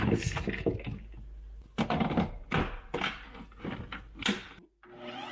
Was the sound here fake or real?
real